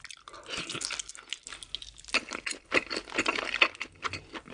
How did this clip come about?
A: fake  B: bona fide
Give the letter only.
B